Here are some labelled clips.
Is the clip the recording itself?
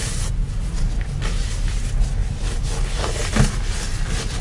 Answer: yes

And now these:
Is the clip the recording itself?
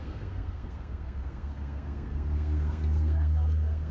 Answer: no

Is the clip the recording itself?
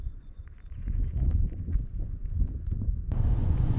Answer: no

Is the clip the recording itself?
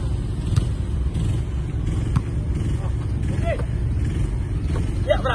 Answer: yes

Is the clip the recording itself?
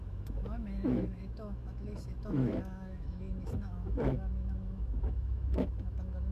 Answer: no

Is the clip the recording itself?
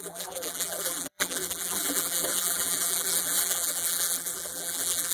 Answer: no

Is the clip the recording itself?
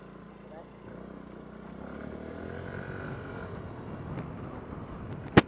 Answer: yes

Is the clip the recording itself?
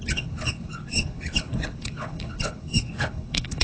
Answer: no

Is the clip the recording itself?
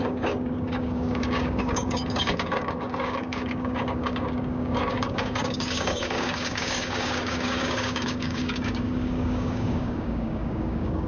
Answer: no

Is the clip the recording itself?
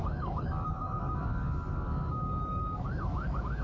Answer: no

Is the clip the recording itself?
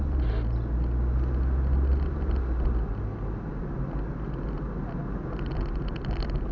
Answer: yes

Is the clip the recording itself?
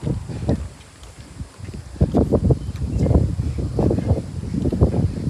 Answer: yes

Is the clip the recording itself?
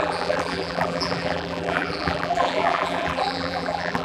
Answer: no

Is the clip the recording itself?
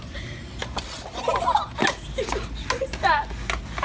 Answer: yes